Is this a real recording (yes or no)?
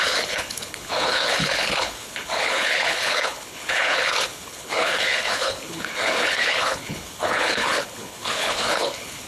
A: no